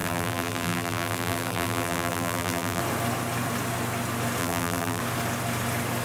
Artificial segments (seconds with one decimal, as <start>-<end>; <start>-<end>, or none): 0.0-2.8; 4.4-5.0